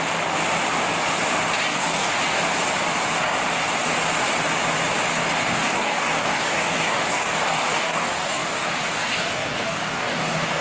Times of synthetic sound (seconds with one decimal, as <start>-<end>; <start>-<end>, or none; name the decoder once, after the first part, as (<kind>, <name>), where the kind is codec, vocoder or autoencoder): 1.7-2.2 (codec, DAC); 5.4-10.6

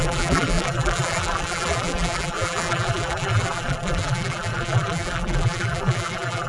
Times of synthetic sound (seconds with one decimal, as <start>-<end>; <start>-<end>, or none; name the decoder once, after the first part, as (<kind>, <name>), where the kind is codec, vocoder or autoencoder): 0.0-6.5 (vocoder, BigVGAN v2)

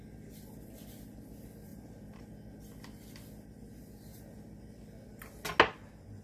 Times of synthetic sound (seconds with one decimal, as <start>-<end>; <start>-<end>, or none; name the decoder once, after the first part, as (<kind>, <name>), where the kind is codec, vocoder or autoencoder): 1.7-2.3 (vocoder, BigVGAN v2); 4.1-4.6

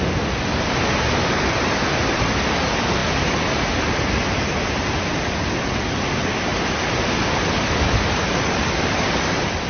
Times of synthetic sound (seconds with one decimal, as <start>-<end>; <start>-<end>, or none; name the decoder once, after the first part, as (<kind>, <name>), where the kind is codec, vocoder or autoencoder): none